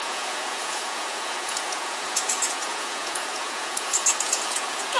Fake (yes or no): yes